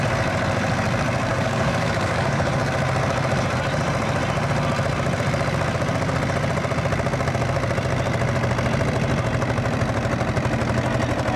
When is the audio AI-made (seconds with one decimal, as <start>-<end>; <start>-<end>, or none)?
1.3-2.7